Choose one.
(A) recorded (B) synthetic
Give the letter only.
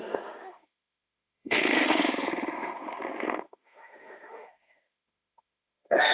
B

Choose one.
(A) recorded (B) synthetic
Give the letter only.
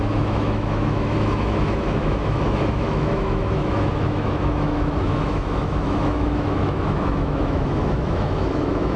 B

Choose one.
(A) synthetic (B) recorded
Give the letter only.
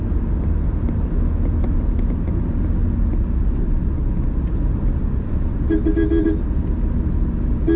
B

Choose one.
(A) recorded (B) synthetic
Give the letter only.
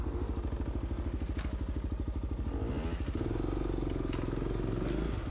A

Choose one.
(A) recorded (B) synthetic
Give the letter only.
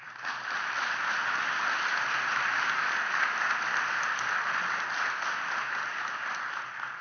A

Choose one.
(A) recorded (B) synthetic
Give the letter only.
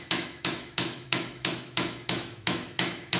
B